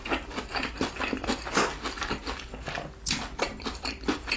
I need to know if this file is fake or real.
real